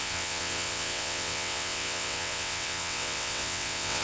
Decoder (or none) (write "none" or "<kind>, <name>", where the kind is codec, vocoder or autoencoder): vocoder, WaveNeXt